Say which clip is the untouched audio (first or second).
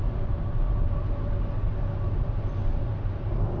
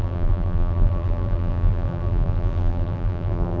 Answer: first